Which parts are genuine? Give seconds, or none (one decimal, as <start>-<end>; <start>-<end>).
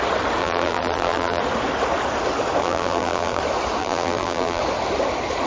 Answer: 0.0-0.4; 1.4-2.6; 3.4-3.8; 4.6-5.5